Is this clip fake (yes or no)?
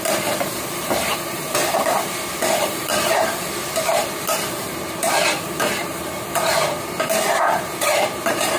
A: yes